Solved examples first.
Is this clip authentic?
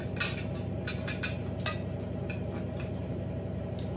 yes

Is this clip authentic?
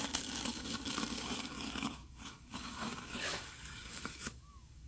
no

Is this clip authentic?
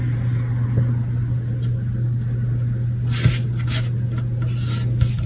yes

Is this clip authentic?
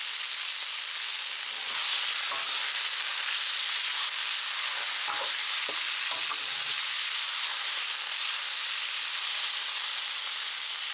yes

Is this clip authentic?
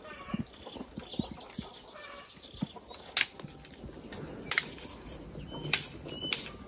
yes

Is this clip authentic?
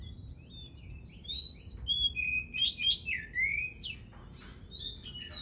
yes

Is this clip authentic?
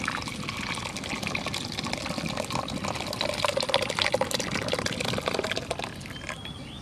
yes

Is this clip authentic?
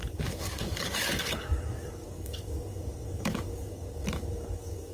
no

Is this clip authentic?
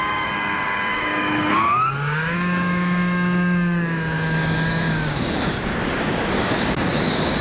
no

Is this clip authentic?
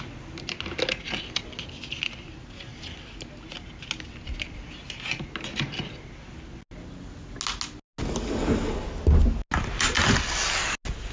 yes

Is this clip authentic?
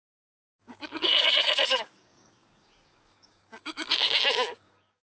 no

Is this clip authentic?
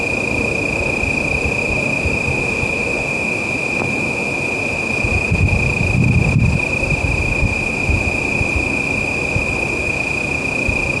yes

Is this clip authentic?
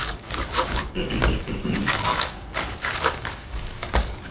no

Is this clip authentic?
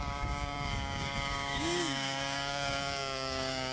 no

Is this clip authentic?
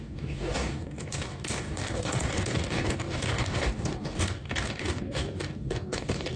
no